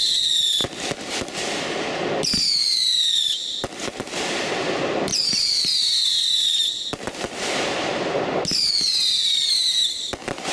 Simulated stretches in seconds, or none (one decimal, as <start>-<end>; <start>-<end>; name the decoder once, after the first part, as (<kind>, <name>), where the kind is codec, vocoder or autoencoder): 0.6-1.6 (vocoder, BigVGAN v2); 2.6-3.1; 5.1-6.9

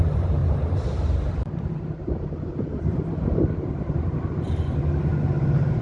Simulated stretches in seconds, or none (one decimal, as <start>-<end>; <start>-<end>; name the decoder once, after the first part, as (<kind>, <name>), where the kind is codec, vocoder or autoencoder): 0.4-3.9 (vocoder, BigVGAN v2)

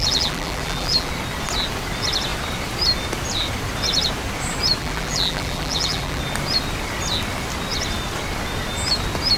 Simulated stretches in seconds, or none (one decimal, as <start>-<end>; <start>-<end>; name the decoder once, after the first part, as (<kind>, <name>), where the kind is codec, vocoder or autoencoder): 0.0-1.1 (vocoder, BigVGAN v2); 4.8-6.2

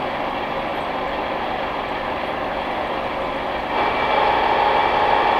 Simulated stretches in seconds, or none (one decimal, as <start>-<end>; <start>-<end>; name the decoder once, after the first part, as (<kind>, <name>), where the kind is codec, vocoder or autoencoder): 0.7-3.6 (vocoder, BigVGAN v2); 4.8-5.4